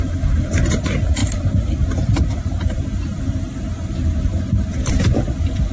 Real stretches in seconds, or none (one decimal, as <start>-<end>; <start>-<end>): 4.3-5.7